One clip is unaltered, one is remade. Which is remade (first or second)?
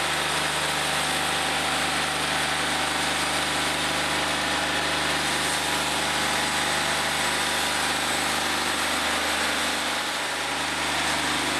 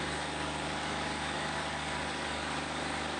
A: second